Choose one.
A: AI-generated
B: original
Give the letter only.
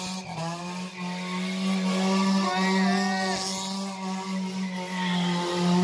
B